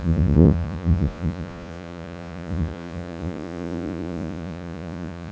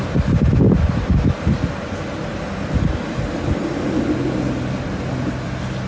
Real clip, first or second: second